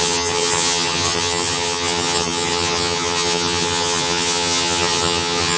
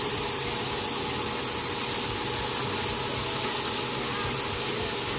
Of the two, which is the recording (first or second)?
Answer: second